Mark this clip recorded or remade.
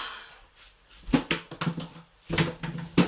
recorded